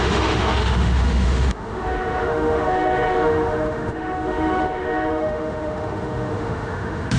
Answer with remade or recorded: remade